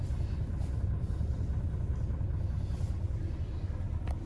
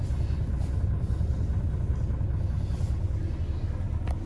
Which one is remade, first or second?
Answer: first